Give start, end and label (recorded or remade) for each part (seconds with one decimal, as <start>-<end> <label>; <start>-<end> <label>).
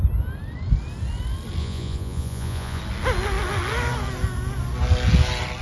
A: 0.0-1.6 recorded; 1.6-2.8 remade; 2.8-5.6 recorded